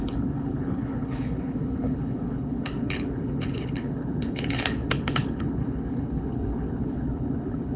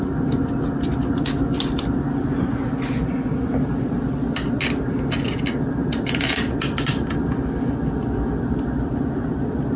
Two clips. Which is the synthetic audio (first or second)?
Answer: first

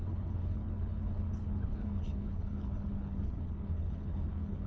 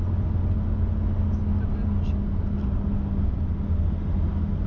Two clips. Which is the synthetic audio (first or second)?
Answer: first